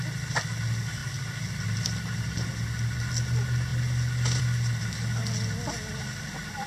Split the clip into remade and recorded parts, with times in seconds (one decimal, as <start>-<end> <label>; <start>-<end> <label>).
0.0-6.7 recorded